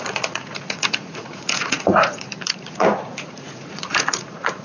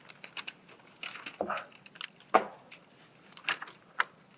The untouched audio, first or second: second